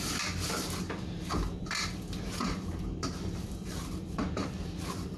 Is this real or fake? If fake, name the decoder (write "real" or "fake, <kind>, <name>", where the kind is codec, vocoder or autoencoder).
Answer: fake, vocoder, BigVGAN v2